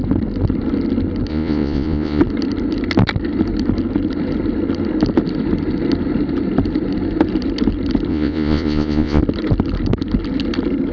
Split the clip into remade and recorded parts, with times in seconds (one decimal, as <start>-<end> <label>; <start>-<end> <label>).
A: 0.0-1.3 recorded; 1.3-2.2 remade; 2.2-8.1 recorded; 8.1-9.2 remade; 9.2-10.9 recorded